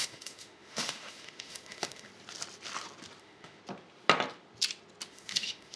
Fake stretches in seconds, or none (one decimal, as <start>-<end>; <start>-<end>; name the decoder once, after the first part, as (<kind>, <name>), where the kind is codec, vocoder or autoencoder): 0.0-2.1 (autoencoder, DAC-VAE); 3.2-3.6; 5.1-5.8